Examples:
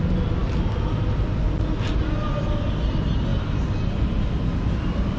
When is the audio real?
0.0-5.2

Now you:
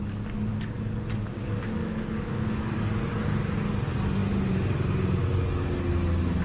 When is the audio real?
0.0-1.8; 2.9-6.4

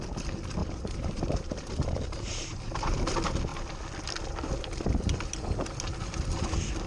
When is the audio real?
0.0-0.6; 3.0-6.9

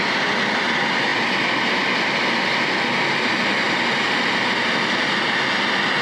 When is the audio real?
0.0-6.0

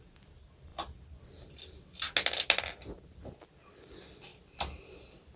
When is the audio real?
0.0-5.4